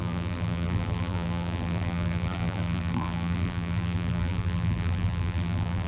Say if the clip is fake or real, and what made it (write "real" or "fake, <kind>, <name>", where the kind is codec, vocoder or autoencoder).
fake, vocoder, BigVGAN v2